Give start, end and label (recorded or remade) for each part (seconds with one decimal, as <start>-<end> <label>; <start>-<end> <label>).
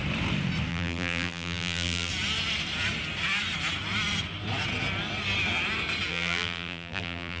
0.0-0.7 recorded; 0.7-2.1 remade; 2.1-6.1 recorded; 6.1-7.4 remade